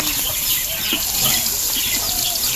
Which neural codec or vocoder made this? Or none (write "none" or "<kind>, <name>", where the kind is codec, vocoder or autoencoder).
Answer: none